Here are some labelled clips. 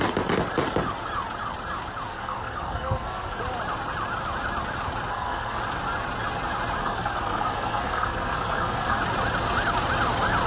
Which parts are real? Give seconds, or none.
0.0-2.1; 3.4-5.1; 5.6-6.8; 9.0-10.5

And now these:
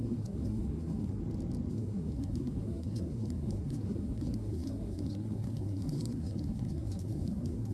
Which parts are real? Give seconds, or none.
1.2-1.7

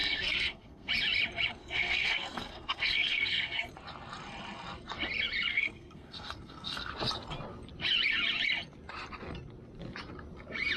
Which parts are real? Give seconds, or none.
0.9-1.6; 3.7-5.5; 6.9-10.8

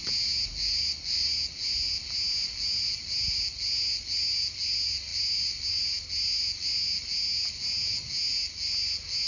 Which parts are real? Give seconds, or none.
0.0-9.3

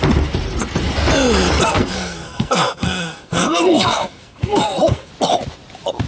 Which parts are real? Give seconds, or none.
0.0-1.7; 5.1-6.1

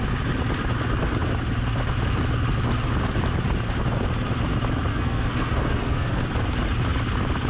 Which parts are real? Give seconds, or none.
0.0-4.9; 6.2-7.5

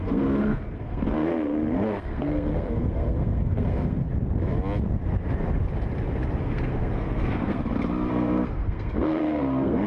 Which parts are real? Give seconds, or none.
4.0-6.4; 7.6-8.1